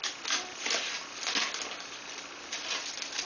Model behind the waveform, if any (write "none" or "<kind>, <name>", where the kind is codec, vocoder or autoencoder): none